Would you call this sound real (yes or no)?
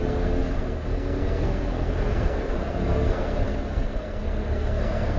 no